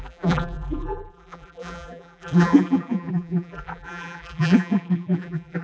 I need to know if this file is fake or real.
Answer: fake